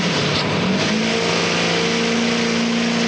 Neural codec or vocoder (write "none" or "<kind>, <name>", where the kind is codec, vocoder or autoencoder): none